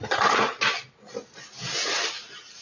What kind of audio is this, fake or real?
real